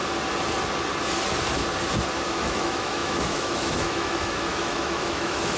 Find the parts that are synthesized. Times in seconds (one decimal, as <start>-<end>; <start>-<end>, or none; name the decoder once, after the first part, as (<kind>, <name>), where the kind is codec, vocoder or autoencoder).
2.3-5.6 (autoencoder, DAC-VAE)